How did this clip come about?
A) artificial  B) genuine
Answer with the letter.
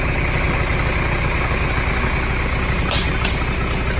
B